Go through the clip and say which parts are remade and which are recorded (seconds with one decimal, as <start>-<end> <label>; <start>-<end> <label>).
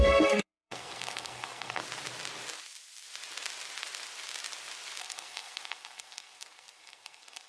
0.0-1.8 remade; 1.8-5.0 recorded; 5.0-7.5 remade